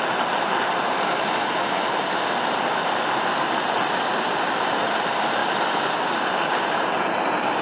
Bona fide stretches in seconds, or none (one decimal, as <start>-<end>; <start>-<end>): 0.0-5.4; 6.7-7.6